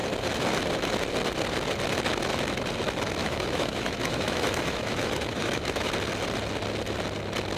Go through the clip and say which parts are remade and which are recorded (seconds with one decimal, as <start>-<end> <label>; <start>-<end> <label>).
0.0-3.2 recorded; 3.2-5.9 remade; 5.9-7.6 recorded